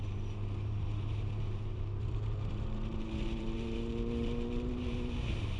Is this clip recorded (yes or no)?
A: no